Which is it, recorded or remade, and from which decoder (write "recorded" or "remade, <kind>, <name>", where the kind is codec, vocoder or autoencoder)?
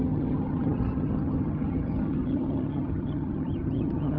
remade, vocoder, HiFi-GAN